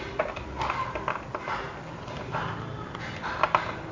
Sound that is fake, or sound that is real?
real